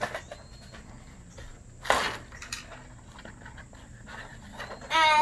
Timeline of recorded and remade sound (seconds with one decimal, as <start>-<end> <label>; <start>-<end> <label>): 0.0-5.2 recorded